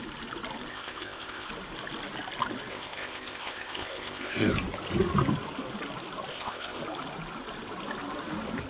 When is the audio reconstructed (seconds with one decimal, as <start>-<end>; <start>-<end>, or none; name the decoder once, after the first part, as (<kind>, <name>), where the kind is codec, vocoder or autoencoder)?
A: 0.7-1.5 (codec, ZipCodec); 2.7-4.5; 6.3-6.8